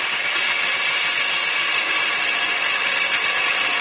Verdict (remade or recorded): recorded